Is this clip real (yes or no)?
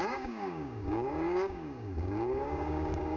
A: no